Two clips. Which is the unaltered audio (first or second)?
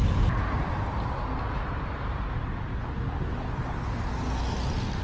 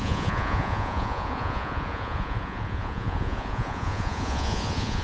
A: first